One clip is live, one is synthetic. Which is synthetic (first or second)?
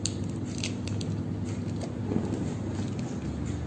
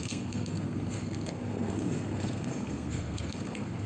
second